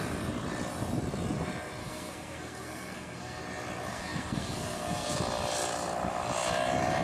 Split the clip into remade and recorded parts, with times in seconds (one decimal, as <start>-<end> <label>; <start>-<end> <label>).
0.0-1.8 recorded; 1.8-3.4 remade; 3.4-3.9 recorded; 3.9-5.2 remade; 5.2-7.0 recorded